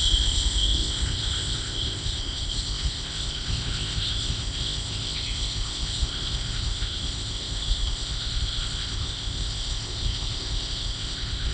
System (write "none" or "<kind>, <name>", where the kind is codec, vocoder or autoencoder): codec, ZipCodec